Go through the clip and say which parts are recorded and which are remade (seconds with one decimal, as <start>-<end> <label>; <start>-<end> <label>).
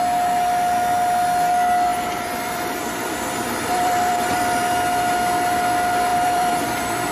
0.0-1.9 recorded; 1.9-4.6 remade; 4.6-6.1 recorded; 6.1-7.1 remade